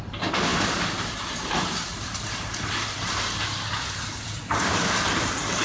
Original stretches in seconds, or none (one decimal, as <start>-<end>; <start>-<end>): 0.5-1.5; 2.1-3.0